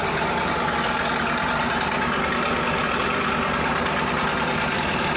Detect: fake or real real